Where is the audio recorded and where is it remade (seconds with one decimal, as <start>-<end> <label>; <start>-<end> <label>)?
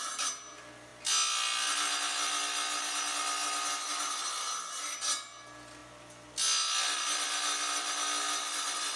0.0-9.0 recorded